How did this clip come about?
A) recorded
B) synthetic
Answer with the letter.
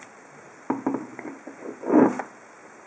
A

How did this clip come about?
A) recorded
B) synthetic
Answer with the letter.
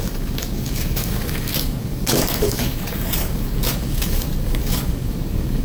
B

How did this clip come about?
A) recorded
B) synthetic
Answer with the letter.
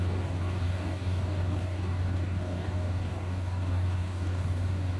B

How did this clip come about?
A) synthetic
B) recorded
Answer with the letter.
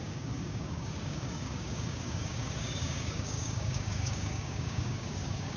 A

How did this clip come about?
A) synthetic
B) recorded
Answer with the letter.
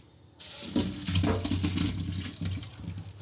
B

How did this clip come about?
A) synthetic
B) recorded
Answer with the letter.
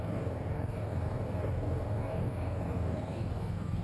A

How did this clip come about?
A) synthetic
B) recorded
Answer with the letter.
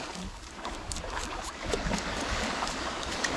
A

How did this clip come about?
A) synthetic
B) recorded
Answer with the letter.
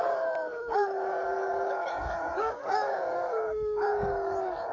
A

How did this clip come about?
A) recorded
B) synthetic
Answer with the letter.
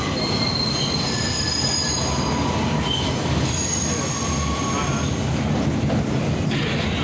A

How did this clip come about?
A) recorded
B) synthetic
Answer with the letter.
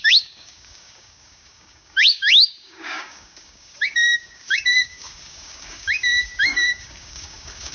B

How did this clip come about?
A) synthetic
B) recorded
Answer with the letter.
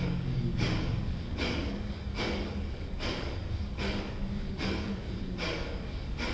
A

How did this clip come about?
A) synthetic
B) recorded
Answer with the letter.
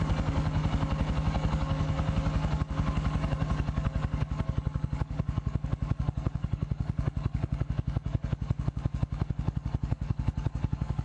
A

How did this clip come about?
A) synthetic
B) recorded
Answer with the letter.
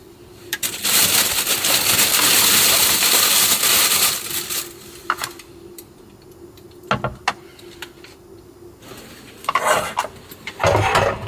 B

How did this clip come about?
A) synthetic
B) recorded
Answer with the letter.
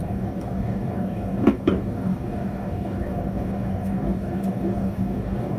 A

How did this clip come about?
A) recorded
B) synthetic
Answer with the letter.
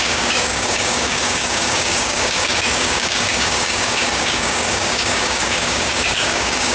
B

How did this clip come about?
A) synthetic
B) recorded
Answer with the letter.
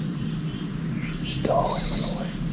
B